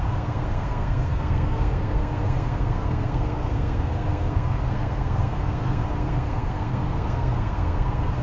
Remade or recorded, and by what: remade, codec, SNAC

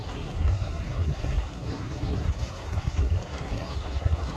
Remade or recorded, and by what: remade, codec, SNAC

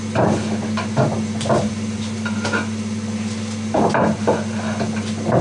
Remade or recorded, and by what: recorded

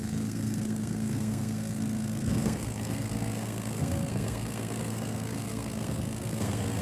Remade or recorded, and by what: remade, codec, SNAC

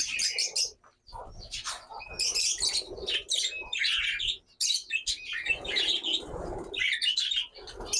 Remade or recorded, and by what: recorded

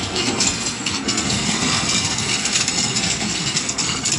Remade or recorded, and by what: remade, codec, SNAC